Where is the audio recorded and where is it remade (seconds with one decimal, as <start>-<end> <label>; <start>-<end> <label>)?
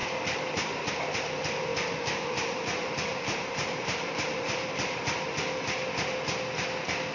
0.0-1.7 recorded; 1.7-5.0 remade; 5.0-7.1 recorded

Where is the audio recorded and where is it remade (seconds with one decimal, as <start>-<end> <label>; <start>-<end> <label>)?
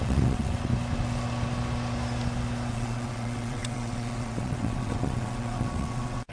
0.0-0.7 remade; 0.7-2.7 recorded; 2.7-6.3 remade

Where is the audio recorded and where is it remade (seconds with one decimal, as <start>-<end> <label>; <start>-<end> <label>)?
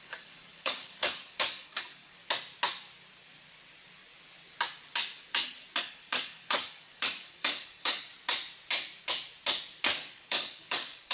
0.0-2.2 remade; 2.2-5.8 recorded; 5.8-8.1 remade; 8.1-10.1 recorded; 10.1-11.1 remade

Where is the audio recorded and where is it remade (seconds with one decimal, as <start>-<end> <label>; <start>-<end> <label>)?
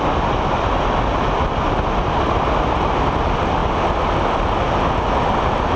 0.0-5.8 recorded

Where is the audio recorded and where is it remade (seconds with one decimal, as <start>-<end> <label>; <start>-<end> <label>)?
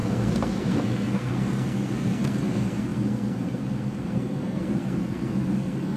0.0-6.0 remade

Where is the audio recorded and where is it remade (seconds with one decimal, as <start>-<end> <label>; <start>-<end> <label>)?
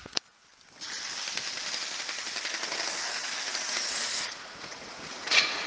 0.0-0.5 remade; 0.5-3.6 recorded; 3.6-5.7 remade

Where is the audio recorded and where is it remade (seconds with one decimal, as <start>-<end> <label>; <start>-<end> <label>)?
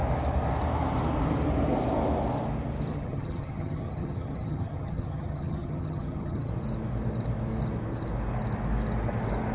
0.0-2.9 recorded; 2.9-6.5 remade; 6.5-9.5 recorded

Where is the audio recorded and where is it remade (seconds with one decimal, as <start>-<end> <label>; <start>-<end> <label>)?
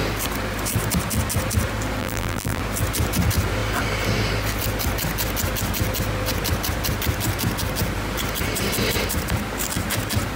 0.0-2.0 recorded; 2.0-2.6 remade; 2.6-10.4 recorded